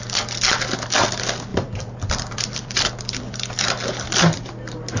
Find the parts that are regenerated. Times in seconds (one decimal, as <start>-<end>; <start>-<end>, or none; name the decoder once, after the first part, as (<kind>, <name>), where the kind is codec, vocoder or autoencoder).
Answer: 1.5-4.5 (vocoder, BigVGAN v2)